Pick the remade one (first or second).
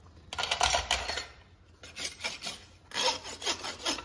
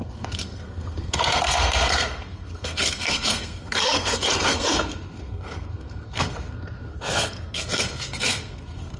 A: second